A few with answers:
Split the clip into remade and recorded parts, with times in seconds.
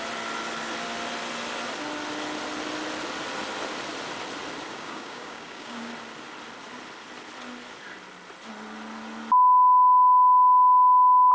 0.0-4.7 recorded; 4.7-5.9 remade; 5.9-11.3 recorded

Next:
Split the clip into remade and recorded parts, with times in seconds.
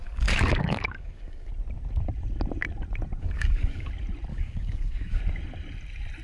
0.0-1.5 remade; 1.5-3.2 recorded; 3.2-3.9 remade; 3.9-4.3 recorded; 4.3-5.2 remade; 5.2-6.2 recorded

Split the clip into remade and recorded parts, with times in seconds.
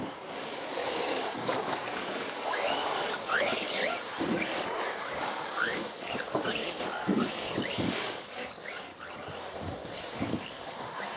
0.0-3.8 remade; 3.8-4.8 recorded; 4.8-6.6 remade; 6.6-7.1 recorded; 7.1-8.9 remade; 8.9-10.1 recorded; 10.1-11.2 remade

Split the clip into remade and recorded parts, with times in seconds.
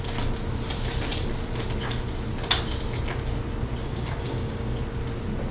0.0-3.8 recorded; 3.8-4.8 remade; 4.8-5.5 recorded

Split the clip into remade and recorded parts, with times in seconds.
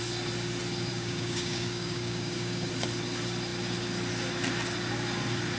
0.0-0.9 recorded; 0.9-2.7 remade; 2.7-5.6 recorded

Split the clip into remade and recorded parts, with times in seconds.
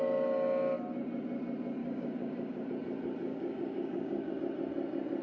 0.0-1.8 recorded; 1.8-2.7 remade; 2.7-3.3 recorded; 3.3-4.3 remade; 4.3-5.2 recorded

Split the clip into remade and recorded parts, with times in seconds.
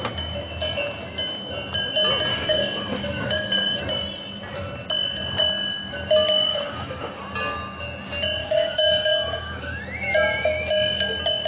0.0-2.3 recorded; 2.3-3.8 remade; 3.8-6.5 recorded; 6.5-7.2 remade; 7.2-8.4 recorded; 8.4-9.8 remade; 9.8-11.5 recorded